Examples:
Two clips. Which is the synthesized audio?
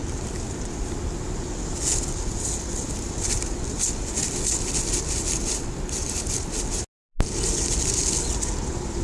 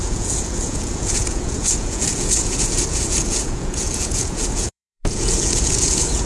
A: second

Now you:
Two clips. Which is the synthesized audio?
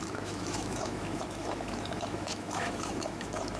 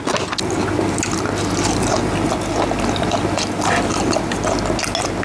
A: first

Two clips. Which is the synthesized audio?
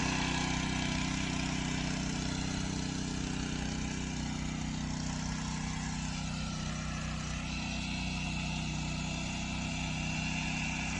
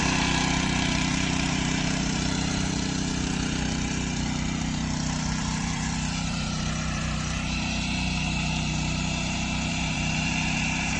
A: second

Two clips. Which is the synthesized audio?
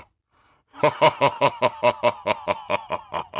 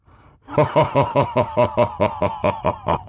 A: second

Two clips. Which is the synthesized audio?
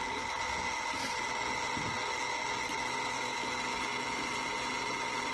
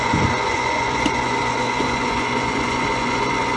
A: second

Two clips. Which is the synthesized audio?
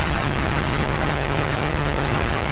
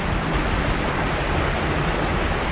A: first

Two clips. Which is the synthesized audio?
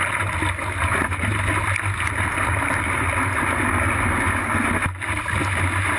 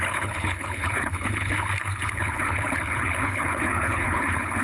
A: second